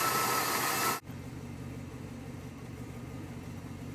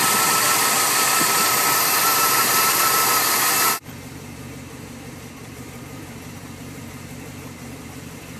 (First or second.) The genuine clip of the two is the first